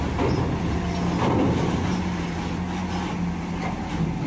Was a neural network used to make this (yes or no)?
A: no